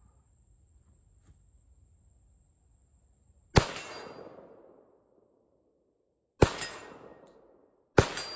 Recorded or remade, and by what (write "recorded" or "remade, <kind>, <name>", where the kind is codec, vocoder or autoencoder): recorded